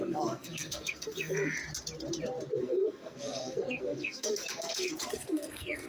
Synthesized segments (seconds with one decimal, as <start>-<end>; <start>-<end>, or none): 0.0-1.6; 2.6-5.9